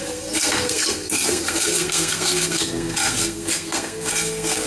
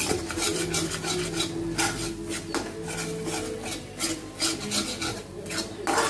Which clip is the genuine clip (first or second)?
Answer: second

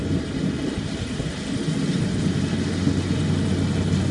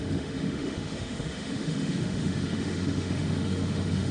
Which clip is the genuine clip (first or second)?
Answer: first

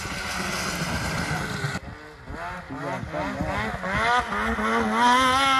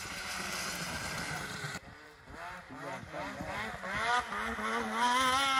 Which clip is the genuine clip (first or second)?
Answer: first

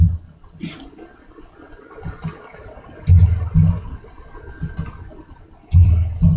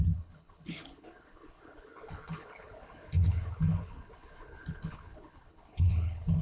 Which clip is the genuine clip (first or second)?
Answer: first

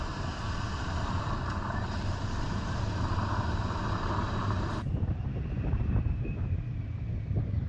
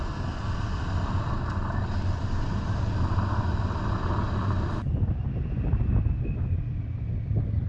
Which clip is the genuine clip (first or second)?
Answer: second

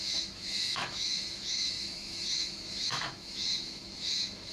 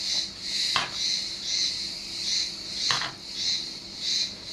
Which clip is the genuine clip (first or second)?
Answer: second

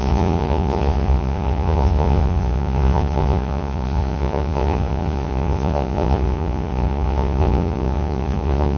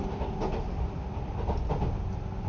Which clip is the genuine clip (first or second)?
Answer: second